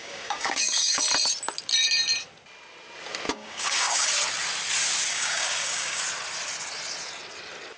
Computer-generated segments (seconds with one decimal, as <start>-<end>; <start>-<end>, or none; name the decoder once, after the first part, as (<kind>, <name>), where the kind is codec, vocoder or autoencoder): 0.0-1.0 (codec, DAC); 3.3-4.1; 5.1-6.0